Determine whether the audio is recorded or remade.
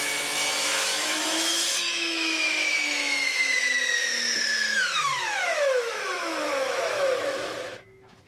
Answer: remade